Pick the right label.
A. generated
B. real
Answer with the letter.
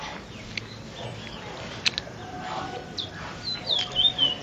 B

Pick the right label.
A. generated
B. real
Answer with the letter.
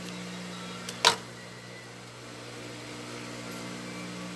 B